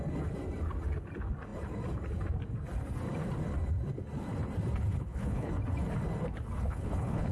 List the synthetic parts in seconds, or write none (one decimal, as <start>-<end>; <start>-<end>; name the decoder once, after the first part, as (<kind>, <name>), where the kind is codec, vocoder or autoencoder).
4.9-5.5 (codec, HILCodec); 6.7-7.3